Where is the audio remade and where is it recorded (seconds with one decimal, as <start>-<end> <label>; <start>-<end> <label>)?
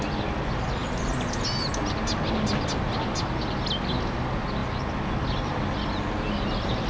0.0-6.9 recorded